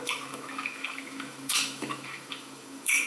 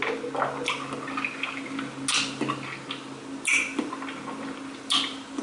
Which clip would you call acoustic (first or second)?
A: second